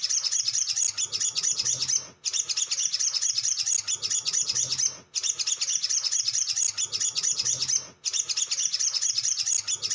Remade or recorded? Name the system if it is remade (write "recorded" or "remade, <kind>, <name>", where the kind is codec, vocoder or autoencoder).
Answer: recorded